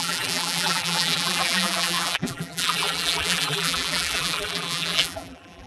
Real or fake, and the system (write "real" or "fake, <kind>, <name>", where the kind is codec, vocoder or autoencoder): fake, vocoder, BigVGAN v2